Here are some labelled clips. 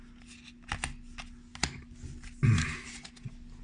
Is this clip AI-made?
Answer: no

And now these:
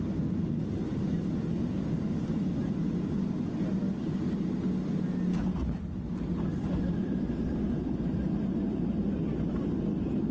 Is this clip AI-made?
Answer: no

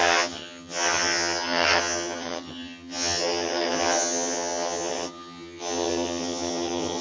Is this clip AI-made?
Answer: yes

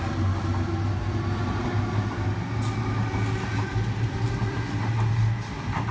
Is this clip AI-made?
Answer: no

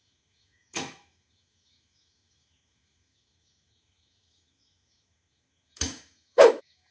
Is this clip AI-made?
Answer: yes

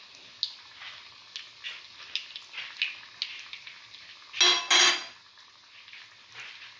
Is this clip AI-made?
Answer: no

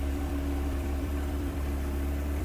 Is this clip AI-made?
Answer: yes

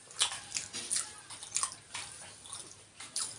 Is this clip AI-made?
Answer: no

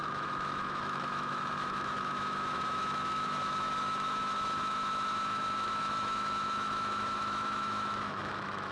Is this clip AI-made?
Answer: yes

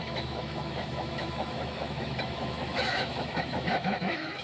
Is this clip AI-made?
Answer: yes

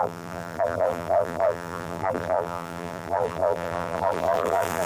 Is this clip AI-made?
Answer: yes